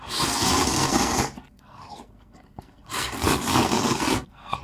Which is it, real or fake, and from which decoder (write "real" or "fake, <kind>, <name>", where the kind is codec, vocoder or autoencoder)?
fake, codec, SNAC